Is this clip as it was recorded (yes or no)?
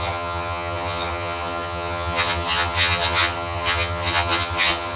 no